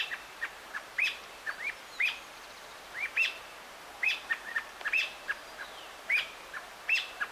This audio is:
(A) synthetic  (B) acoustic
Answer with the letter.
A